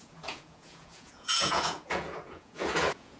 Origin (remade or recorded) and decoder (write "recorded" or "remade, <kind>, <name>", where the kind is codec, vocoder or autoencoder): remade, vocoder, Vocos